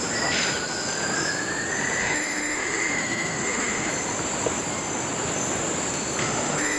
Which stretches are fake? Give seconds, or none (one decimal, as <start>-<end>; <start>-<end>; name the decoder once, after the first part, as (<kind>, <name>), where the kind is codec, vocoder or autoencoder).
2.0-3.9 (autoencoder, DAC-VAE); 6.2-6.8